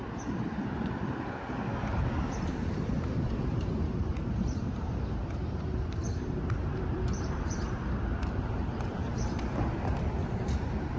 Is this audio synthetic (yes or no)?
yes